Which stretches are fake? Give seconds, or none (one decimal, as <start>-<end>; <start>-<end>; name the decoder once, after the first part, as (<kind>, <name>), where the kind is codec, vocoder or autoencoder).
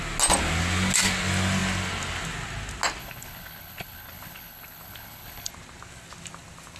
3.0-5.5 (codec, HILCodec)